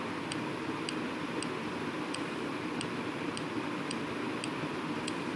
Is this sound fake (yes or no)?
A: no